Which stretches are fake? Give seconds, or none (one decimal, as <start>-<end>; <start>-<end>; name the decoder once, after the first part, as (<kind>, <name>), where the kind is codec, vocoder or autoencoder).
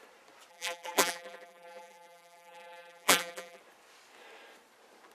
0.5-3.6 (vocoder, BigVGAN v2)